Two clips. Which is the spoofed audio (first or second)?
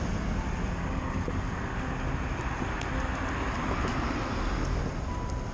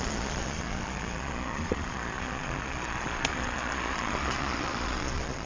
second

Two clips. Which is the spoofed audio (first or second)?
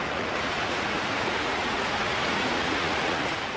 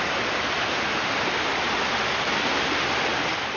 first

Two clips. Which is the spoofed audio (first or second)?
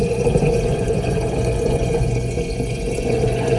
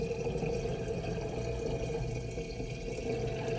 first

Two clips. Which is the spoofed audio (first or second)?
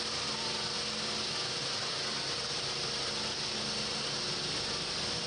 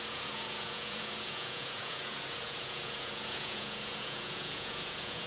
second